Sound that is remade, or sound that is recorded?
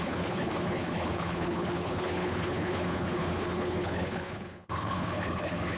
remade